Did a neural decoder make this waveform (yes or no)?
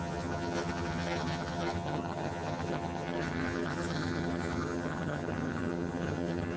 yes